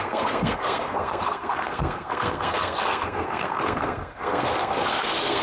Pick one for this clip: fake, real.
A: fake